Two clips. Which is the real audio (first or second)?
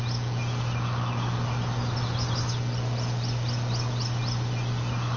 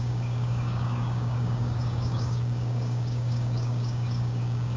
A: first